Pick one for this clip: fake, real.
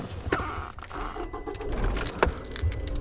real